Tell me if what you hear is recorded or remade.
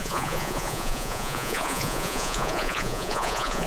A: remade